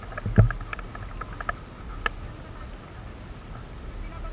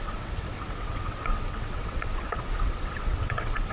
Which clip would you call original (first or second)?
first